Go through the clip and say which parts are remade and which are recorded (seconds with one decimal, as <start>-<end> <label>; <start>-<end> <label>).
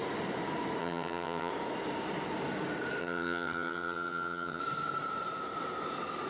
0.0-0.8 recorded; 0.8-1.5 remade; 1.5-3.0 recorded; 3.0-4.6 remade; 4.6-6.3 recorded